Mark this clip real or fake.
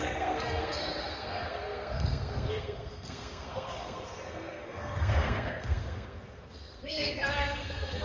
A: fake